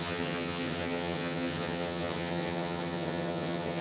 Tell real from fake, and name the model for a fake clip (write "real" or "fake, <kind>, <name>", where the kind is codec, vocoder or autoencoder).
fake, vocoder, HiFi-GAN